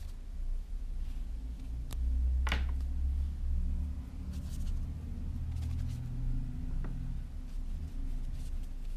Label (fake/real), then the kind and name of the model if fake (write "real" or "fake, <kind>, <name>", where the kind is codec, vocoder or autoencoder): real